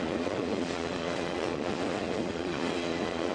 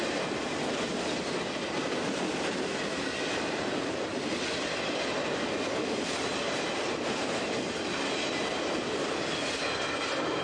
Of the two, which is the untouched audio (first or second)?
second